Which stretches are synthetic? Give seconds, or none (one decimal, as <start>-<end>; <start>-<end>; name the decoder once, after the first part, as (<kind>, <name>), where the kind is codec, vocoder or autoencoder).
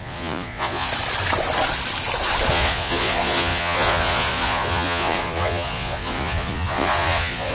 0.0-0.9 (vocoder, Vocos); 2.5-7.5